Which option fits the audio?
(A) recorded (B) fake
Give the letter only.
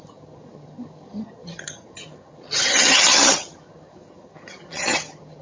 B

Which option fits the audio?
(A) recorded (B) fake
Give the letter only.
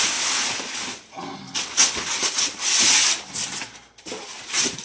A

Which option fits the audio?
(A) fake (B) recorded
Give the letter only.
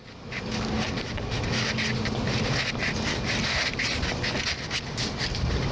B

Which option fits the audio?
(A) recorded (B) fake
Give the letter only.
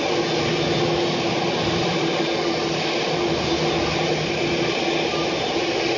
A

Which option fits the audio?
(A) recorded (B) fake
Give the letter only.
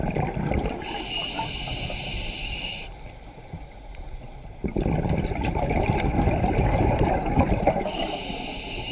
A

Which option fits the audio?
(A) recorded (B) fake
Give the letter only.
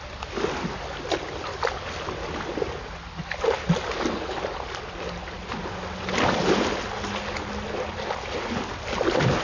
A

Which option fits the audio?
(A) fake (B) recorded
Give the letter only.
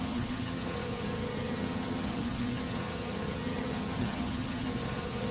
A